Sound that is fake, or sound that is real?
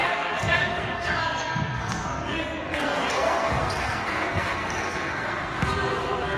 fake